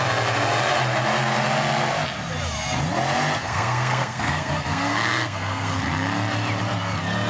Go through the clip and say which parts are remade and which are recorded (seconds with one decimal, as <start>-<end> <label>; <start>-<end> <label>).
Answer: 0.0-3.4 recorded; 3.4-5.8 remade; 5.8-7.3 recorded